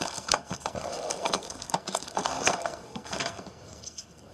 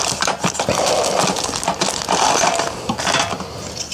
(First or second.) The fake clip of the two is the first